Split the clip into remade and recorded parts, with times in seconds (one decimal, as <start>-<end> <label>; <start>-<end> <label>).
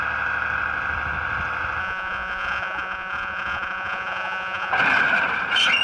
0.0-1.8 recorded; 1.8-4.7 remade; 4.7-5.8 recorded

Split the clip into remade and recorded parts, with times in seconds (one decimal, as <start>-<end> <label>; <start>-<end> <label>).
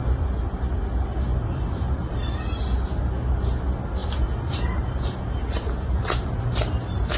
0.0-1.3 recorded; 1.3-2.3 remade; 2.3-4.0 recorded; 4.0-7.2 remade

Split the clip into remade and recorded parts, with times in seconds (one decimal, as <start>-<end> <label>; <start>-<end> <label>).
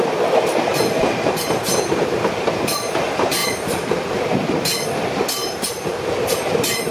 0.0-0.7 recorded; 0.7-2.3 remade; 2.3-3.4 recorded; 3.4-4.3 remade; 4.3-5.4 recorded; 5.4-6.4 remade; 6.4-6.9 recorded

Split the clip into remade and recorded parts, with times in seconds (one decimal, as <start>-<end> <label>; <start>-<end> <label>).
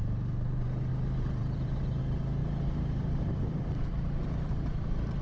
0.0-0.9 recorded; 0.9-2.0 remade; 2.0-2.4 recorded; 2.4-4.7 remade; 4.7-5.2 recorded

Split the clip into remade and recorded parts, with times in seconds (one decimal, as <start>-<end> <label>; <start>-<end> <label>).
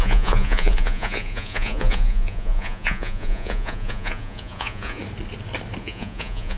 0.0-5.0 remade; 5.0-5.8 recorded; 5.8-6.6 remade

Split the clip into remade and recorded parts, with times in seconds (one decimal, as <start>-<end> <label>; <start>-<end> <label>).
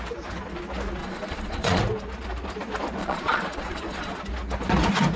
0.0-1.0 recorded; 1.0-1.8 remade; 1.8-3.0 recorded; 3.0-4.2 remade; 4.2-5.2 recorded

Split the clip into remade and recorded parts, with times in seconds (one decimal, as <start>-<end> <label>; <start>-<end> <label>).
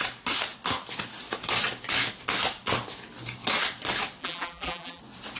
0.0-4.2 recorded; 4.2-5.0 remade; 5.0-5.4 recorded